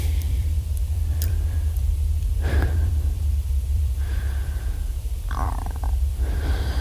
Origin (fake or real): fake